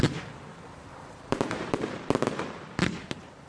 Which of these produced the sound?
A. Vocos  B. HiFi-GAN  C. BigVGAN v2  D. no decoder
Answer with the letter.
C